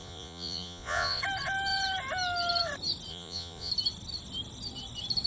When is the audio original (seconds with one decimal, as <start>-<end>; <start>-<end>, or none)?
1.2-3.1; 3.7-5.3